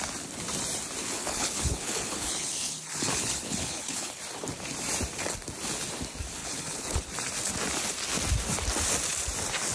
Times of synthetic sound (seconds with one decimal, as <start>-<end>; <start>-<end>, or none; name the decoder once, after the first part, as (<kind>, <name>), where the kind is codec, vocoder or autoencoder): 1.0-4.2 (codec, HILCodec); 6.4-7.1